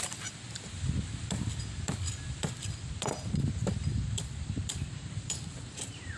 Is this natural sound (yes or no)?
no